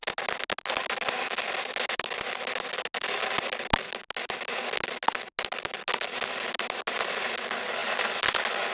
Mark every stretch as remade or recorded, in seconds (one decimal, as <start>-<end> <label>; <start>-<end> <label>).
0.0-8.7 recorded